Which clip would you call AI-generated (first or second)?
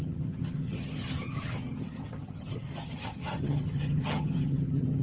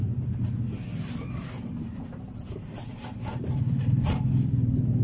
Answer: first